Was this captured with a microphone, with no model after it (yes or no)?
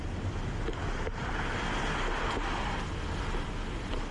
yes